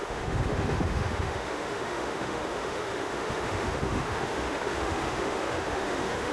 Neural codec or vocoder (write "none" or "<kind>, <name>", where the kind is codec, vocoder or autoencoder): autoencoder, DAC-VAE